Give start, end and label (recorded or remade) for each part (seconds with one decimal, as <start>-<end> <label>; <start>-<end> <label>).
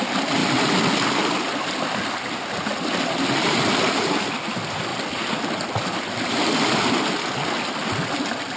0.0-8.6 recorded